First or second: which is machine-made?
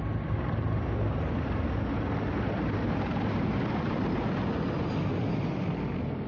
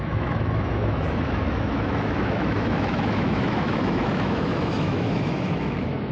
second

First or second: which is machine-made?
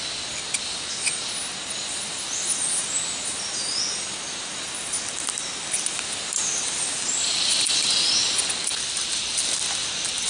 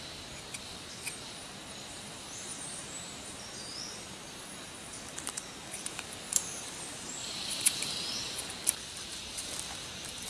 second